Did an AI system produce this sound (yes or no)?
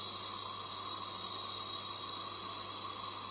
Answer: no